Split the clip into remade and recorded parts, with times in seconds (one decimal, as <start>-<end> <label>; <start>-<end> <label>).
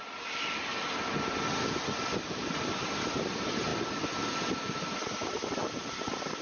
0.0-6.4 recorded